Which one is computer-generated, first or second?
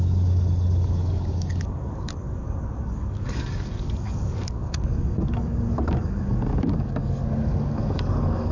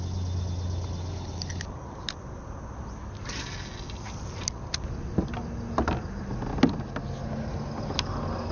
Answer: first